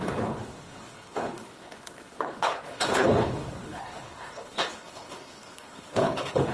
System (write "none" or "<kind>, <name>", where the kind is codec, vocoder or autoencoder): codec, HILCodec